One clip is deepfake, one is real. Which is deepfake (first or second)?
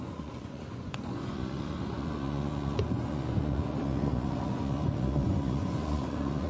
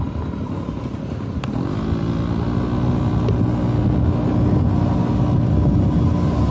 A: first